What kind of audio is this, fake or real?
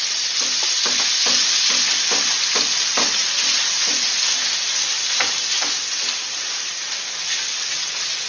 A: real